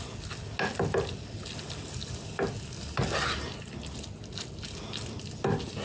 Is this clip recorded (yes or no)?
yes